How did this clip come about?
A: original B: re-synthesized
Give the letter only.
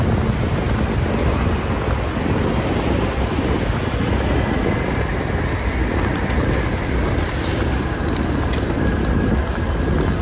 A